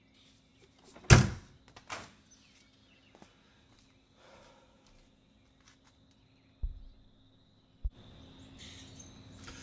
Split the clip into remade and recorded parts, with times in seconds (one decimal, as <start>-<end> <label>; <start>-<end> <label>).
0.0-9.6 recorded